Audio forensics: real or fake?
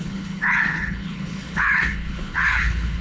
fake